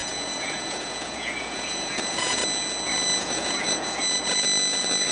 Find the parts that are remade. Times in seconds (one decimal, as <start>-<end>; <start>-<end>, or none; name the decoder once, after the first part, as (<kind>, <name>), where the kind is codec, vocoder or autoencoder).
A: 0.0-2.4 (vocoder, Vocos); 3.2-4.0